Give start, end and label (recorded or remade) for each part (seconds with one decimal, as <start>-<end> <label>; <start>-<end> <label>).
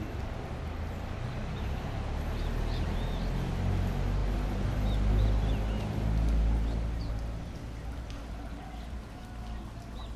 0.0-10.2 recorded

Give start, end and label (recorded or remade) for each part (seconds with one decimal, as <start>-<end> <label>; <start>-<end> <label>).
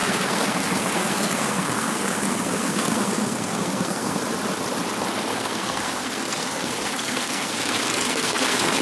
0.0-4.2 remade; 4.2-5.3 recorded; 5.3-8.8 remade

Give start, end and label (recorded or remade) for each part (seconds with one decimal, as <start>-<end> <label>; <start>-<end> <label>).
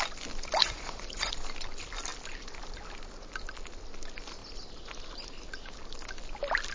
0.0-0.6 recorded; 0.6-1.3 remade; 1.3-6.7 recorded